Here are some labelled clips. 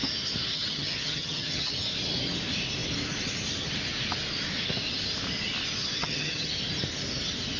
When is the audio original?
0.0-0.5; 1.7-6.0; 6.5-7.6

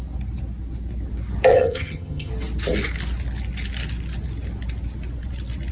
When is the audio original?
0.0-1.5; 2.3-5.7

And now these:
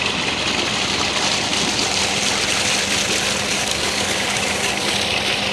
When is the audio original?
0.0-3.5; 4.9-5.5